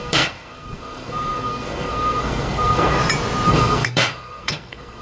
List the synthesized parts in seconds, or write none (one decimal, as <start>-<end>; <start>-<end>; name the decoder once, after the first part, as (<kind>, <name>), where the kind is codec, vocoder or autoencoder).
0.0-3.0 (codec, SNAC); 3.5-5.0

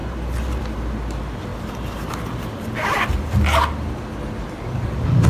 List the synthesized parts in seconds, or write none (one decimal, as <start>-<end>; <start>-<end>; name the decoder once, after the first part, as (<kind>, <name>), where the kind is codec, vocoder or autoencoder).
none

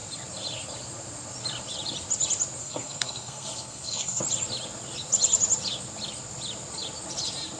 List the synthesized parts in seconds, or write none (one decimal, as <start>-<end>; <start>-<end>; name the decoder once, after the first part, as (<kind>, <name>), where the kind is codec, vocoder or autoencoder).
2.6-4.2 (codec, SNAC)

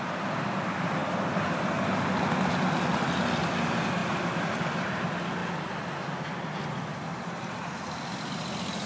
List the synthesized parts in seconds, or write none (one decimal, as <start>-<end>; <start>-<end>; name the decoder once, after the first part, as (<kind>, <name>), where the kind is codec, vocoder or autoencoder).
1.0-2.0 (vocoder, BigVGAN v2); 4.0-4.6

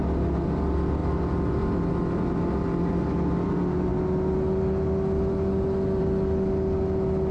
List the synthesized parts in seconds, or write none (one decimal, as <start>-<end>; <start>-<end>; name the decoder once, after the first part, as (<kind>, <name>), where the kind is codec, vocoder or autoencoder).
none

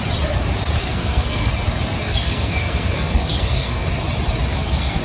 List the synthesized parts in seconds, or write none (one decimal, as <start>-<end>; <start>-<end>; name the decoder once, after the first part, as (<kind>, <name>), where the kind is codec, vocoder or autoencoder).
0.8-1.5 (codec, SNAC); 2.0-3.9; 4.5-5.0

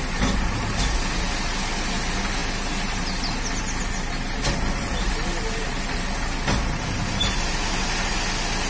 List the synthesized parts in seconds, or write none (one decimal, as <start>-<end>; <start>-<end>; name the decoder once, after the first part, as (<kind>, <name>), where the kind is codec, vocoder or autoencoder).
none

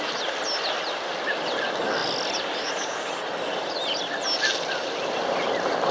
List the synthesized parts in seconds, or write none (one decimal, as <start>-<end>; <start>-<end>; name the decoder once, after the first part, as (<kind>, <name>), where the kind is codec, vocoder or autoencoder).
none